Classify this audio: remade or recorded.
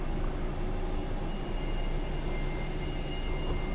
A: recorded